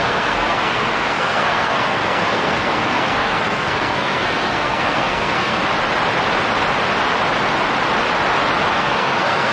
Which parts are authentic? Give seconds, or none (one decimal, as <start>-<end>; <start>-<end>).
5.6-8.7